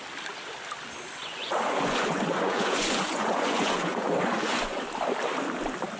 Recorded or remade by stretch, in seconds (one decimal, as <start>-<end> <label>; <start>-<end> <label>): 0.0-1.2 recorded; 1.2-4.8 remade; 4.8-6.0 recorded